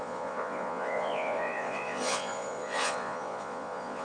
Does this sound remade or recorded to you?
remade